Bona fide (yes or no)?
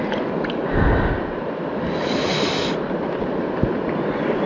yes